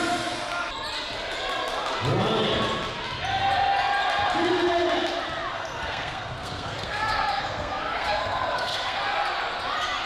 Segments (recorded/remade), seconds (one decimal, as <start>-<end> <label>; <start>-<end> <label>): 0.0-5.5 recorded; 5.5-9.0 remade; 9.0-10.1 recorded